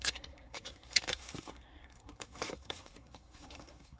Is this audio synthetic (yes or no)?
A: yes